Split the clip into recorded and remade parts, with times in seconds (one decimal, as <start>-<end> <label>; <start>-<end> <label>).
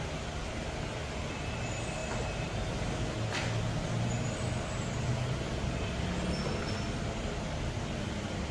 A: 0.0-8.5 recorded